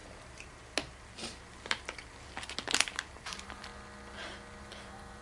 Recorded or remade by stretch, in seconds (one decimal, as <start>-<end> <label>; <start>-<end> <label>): 0.0-3.1 recorded; 3.1-3.7 remade; 3.7-4.6 recorded; 4.6-5.2 remade